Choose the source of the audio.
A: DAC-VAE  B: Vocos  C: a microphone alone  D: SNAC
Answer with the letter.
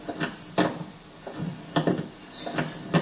C